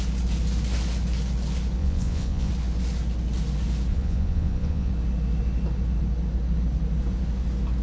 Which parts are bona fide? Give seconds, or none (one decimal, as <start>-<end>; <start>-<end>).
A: 0.0-1.8; 2.5-3.9; 4.9-7.8